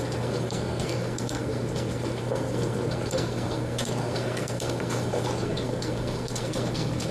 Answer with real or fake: fake